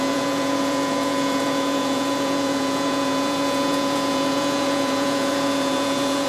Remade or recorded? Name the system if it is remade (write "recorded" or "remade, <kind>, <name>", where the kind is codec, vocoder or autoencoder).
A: remade, vocoder, Vocos